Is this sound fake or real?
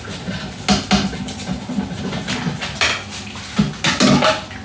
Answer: real